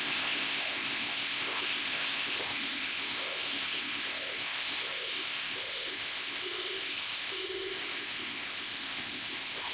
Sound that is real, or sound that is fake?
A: fake